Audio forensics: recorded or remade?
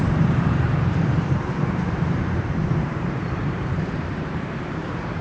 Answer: remade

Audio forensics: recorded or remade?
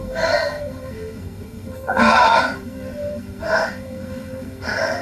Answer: remade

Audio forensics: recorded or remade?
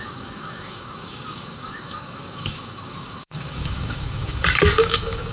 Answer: remade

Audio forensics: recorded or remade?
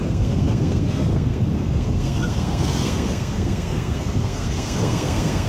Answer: remade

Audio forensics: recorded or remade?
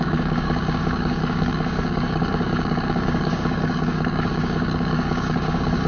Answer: remade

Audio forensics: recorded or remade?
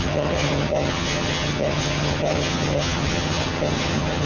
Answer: remade